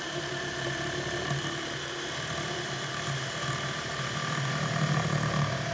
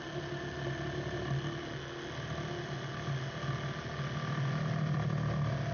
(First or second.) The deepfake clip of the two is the first